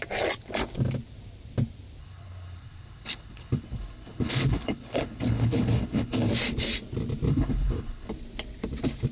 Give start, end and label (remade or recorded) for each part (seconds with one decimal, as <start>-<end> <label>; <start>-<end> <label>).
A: 0.0-2.0 recorded; 2.0-6.3 remade; 6.3-7.3 recorded; 7.3-8.1 remade; 8.1-9.1 recorded